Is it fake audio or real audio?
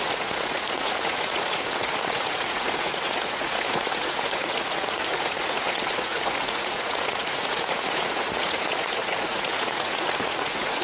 fake